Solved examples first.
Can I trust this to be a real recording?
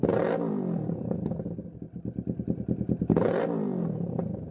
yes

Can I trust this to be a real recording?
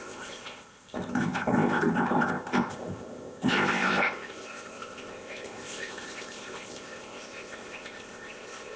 no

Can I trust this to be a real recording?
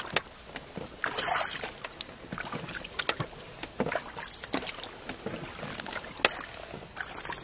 yes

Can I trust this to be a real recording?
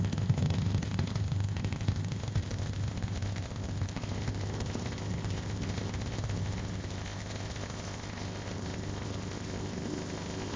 no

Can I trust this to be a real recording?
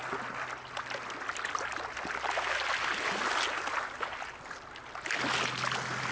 yes